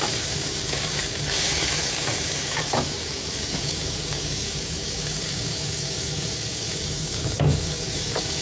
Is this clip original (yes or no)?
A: no